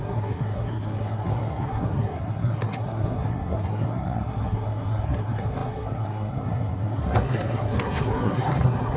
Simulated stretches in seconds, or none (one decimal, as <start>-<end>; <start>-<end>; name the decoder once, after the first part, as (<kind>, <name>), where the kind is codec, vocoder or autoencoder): 0.0-9.0 (codec, SNAC)